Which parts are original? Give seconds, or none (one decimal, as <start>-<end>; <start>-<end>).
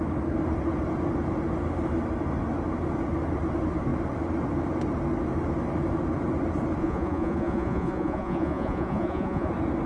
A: 0.0-6.8; 9.5-9.9